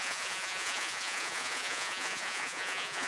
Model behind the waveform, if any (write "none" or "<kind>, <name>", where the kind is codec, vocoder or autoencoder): vocoder, Vocos